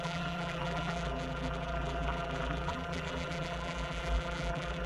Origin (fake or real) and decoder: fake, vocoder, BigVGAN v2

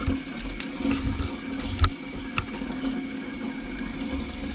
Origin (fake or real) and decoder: real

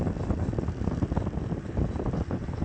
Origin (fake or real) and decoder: real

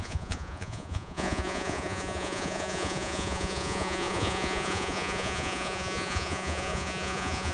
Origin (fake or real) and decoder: fake, vocoder, Vocos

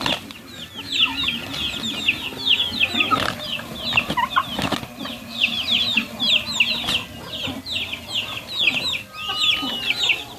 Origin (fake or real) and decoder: real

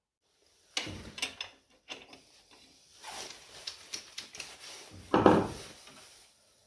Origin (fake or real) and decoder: real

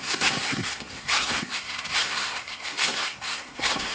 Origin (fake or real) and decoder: fake, codec, SNAC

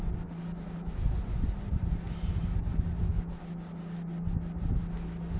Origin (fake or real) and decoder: real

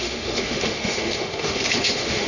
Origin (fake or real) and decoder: fake, autoencoder, DAC-VAE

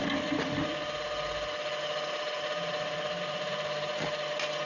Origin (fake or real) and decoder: real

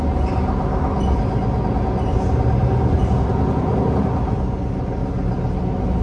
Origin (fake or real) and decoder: real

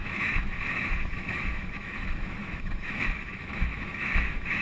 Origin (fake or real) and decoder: fake, autoencoder, DAC-VAE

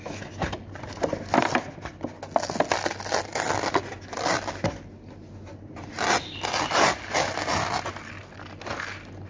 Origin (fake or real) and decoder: real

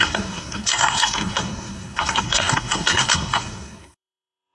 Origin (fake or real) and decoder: fake, codec, SNAC